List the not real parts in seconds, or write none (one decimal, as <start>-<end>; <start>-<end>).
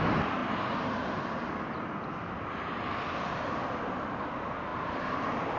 4.7-5.6